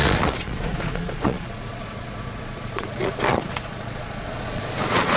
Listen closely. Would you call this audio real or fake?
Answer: fake